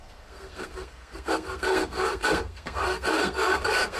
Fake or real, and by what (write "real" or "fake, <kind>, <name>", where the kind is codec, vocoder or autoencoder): fake, codec, SNAC